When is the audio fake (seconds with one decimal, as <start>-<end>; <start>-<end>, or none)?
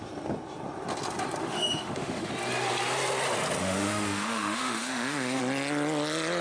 1.4-2.3; 3.6-5.4